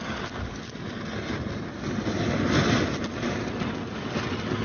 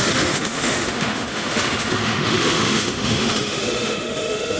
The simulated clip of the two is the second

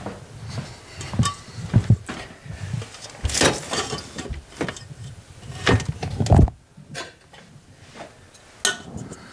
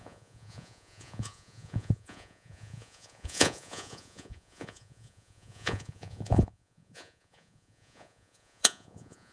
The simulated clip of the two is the second